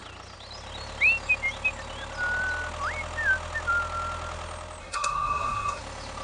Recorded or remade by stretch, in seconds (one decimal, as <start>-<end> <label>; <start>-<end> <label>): 0.0-4.8 recorded; 4.8-5.8 remade; 5.8-6.2 recorded